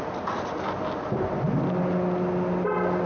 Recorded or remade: recorded